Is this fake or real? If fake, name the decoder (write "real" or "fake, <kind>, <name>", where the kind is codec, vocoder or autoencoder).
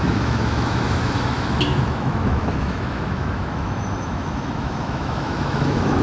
fake, autoencoder, DAC-VAE